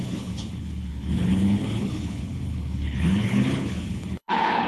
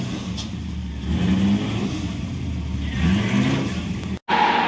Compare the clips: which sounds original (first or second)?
second